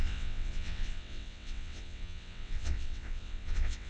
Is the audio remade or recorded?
remade